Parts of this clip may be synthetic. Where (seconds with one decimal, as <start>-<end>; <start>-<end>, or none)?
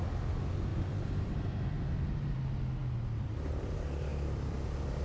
0.7-2.4